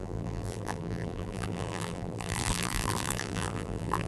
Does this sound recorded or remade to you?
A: remade